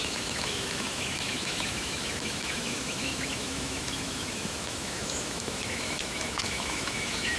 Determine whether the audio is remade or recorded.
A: remade